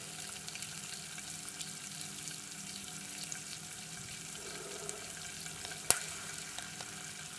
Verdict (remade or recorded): recorded